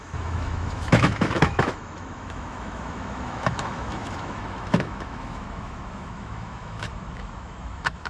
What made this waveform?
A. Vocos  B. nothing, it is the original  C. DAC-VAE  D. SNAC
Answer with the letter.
C